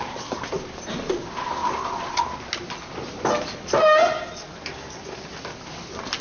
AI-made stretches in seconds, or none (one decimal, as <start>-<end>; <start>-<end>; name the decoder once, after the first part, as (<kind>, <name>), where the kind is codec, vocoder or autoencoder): none